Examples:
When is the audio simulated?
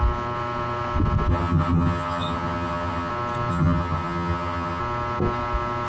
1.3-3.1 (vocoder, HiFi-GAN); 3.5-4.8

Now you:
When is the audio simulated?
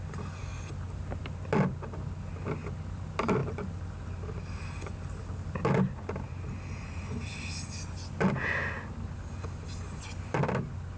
none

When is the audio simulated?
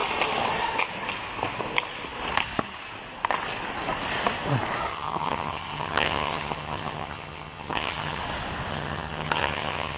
4.9-8.2 (vocoder, HiFi-GAN); 8.7-10.0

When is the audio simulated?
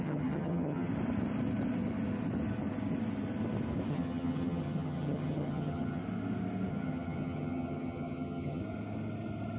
0.0-0.9 (vocoder, HiFi-GAN); 3.9-6.0; 6.7-8.6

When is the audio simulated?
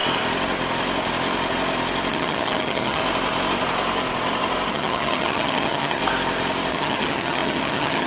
2.1-3.0 (vocoder, HiFi-GAN); 4.7-6.0; 6.7-8.1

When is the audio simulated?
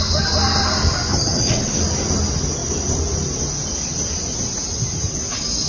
1.1-1.8 (vocoder, HiFi-GAN)